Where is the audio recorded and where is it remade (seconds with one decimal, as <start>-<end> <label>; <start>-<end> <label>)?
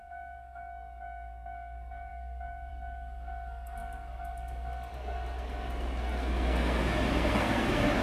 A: 0.0-8.0 remade